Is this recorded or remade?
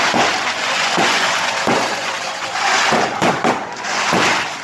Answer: remade